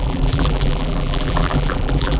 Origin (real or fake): fake